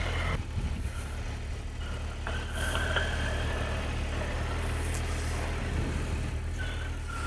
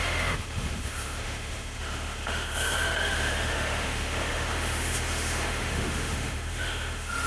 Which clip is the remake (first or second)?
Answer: second